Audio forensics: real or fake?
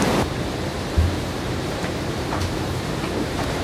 fake